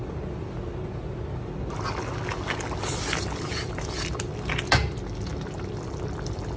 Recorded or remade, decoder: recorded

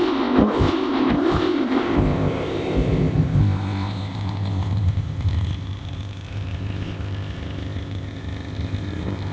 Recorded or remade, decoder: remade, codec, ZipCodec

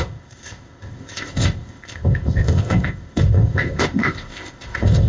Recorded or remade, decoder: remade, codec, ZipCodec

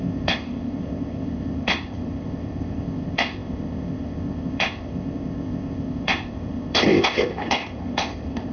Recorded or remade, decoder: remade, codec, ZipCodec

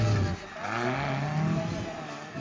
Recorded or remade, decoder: recorded